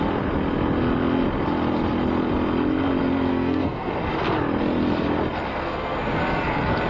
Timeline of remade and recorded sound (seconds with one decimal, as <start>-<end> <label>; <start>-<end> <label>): 0.0-3.3 recorded; 3.3-3.9 remade; 3.9-5.5 recorded; 5.5-6.2 remade; 6.2-6.9 recorded